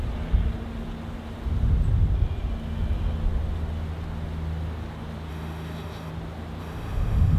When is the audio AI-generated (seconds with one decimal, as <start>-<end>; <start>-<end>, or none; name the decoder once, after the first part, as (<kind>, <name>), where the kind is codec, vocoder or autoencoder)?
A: 5.3-6.1 (autoencoder, DAC-VAE); 6.6-7.4